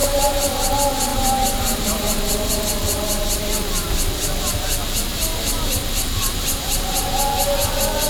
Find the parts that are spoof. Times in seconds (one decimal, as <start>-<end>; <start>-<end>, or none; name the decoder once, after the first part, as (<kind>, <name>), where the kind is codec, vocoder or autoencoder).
0.0-0.7 (vocoder, BigVGAN v2); 1.1-2.6; 5.1-7.1